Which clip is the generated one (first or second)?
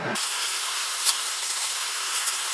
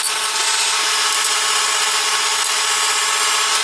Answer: first